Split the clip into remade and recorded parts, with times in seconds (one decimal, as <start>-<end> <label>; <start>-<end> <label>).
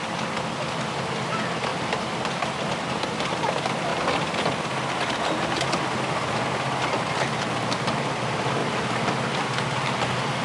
0.0-10.4 recorded